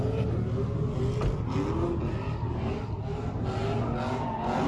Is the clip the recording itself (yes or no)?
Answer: yes